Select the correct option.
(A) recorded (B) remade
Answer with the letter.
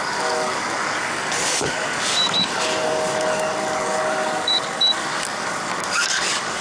B